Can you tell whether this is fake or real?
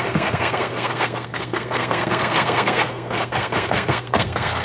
fake